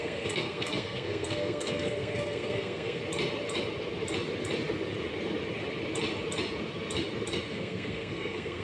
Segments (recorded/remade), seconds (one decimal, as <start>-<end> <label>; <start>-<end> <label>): 0.0-3.0 remade; 3.0-7.5 recorded; 7.5-8.6 remade